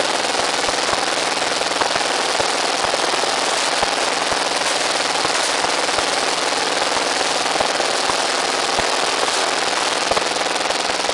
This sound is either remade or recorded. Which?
recorded